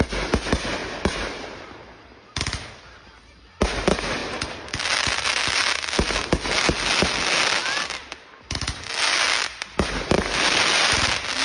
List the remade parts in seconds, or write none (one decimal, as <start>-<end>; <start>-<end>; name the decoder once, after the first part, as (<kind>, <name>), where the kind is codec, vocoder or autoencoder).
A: 7.6-8.1 (vocoder, BigVGAN v2)